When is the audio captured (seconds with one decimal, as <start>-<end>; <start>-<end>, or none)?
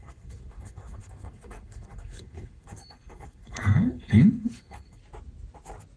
5.0-6.0